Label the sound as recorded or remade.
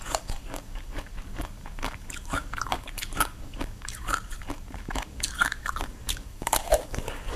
remade